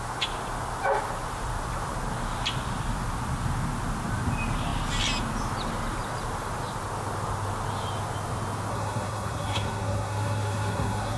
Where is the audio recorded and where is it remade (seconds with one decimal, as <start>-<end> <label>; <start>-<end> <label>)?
0.0-8.7 recorded; 8.7-11.2 remade